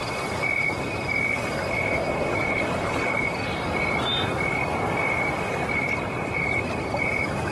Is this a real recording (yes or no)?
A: no